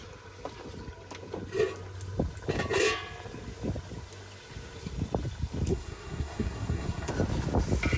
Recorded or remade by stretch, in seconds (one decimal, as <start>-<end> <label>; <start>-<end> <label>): 0.0-5.7 recorded; 5.7-7.1 remade; 7.1-8.0 recorded